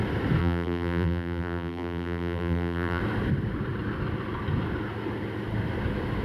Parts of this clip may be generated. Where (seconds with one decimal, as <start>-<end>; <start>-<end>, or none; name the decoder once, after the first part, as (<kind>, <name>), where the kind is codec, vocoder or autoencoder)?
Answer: 0.4-3.0 (vocoder, BigVGAN v2)